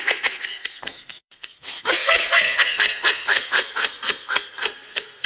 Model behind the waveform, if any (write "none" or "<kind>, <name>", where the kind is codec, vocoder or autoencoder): codec, SNAC